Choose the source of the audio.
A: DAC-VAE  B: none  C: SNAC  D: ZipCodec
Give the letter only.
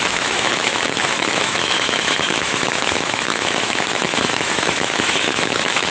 A